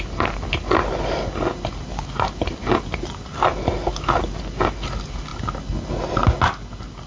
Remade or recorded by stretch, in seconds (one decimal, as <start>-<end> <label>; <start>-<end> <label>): 0.0-7.1 recorded